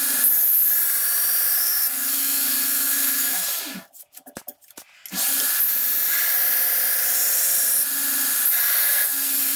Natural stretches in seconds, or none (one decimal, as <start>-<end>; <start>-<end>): 0.0-1.6; 3.6-8.8